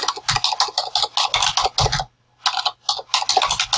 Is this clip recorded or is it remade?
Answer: recorded